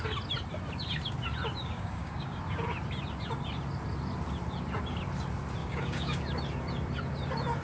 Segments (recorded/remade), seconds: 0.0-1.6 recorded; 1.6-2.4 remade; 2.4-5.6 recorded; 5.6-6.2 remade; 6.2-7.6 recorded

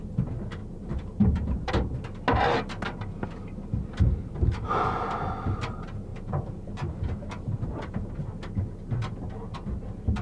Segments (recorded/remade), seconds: 0.0-0.6 recorded; 0.6-1.7 remade; 1.7-6.1 recorded; 6.1-7.9 remade; 7.9-10.2 recorded

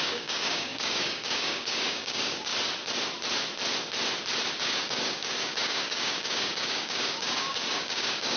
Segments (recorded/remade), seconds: 0.0-2.5 remade; 2.5-4.6 recorded; 4.6-8.4 remade

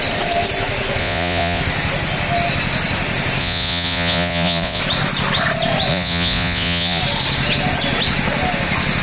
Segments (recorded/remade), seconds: 0.0-1.0 recorded; 1.0-1.6 remade; 1.6-3.4 recorded; 3.4-4.8 remade; 4.8-5.9 recorded; 5.9-7.0 remade; 7.0-9.0 recorded

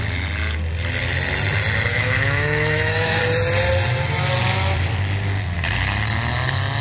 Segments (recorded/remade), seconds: 0.0-1.9 recorded; 1.9-3.2 remade; 3.2-6.8 recorded